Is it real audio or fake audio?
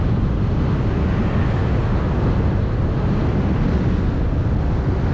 real